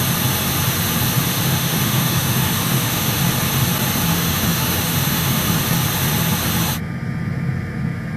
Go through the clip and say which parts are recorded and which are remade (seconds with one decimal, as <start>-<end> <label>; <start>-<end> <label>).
0.0-1.3 recorded; 1.3-3.2 remade; 3.2-4.1 recorded; 4.1-5.4 remade; 5.4-8.2 recorded